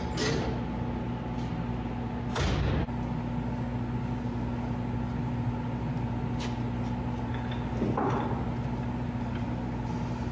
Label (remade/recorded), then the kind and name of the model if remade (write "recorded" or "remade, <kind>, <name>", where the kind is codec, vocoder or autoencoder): recorded